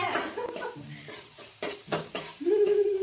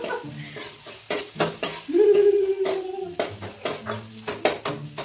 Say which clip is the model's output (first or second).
first